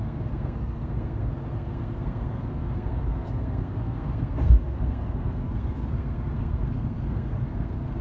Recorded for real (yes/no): no